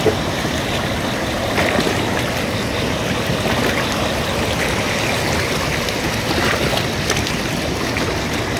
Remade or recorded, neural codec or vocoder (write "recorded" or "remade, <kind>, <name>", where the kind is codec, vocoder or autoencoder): recorded